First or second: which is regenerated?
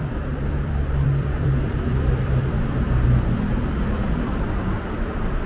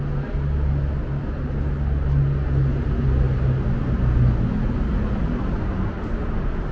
first